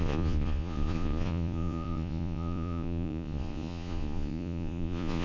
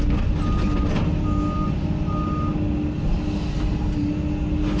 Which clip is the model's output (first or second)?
first